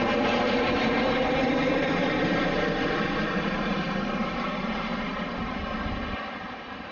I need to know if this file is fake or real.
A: fake